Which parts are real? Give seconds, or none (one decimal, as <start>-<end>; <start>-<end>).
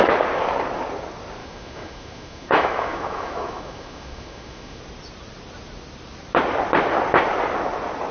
0.0-1.4; 4.8-8.1